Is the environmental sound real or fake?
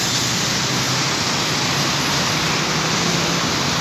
real